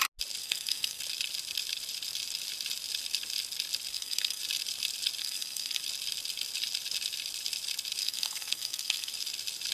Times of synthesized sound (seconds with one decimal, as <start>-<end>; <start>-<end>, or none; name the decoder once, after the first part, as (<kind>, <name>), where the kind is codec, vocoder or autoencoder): 0.4-1.0 (codec, SNAC); 3.9-4.4; 5.2-5.8; 8.0-9.1